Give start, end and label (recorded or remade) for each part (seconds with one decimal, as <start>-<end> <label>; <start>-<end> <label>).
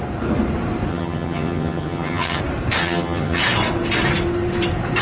0.0-0.9 recorded; 0.9-2.4 remade; 2.4-2.8 recorded; 2.8-3.4 remade; 3.4-5.0 recorded